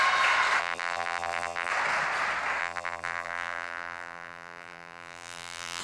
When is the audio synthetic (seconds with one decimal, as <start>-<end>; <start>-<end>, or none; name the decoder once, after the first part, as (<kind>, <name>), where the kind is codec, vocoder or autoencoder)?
0.6-1.7 (vocoder, BigVGAN v2); 2.6-5.8